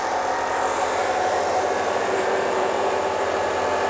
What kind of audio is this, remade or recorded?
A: remade